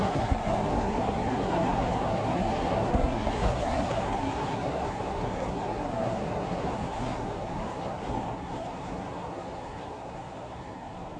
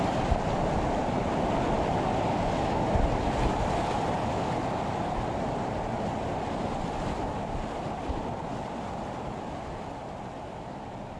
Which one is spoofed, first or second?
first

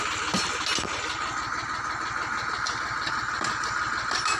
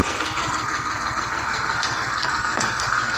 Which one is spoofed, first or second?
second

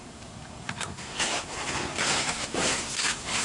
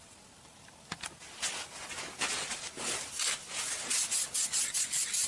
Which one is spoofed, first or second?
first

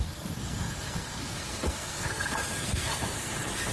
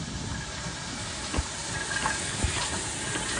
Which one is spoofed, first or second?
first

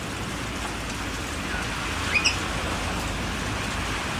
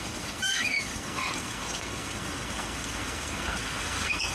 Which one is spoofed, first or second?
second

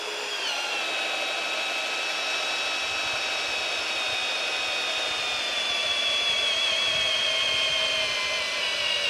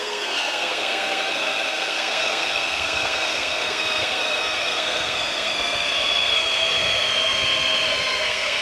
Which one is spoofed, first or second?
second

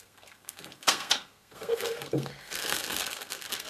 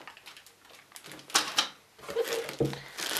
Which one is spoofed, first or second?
first